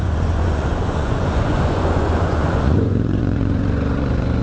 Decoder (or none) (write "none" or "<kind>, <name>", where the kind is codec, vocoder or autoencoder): vocoder, Vocos